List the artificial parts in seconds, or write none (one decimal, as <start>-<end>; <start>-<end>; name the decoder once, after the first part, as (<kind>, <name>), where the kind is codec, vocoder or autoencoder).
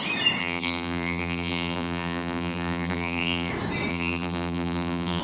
0.4-3.5 (vocoder, BigVGAN v2); 3.9-5.2